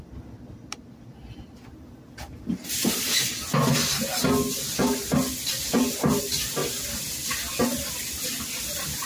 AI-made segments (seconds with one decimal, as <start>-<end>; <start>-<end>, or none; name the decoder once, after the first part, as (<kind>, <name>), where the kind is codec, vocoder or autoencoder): none